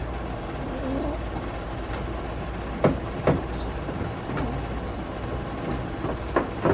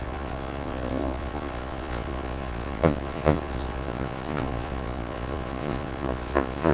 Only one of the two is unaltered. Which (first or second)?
first